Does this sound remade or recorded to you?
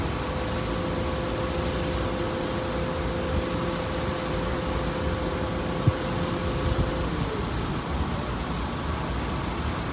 recorded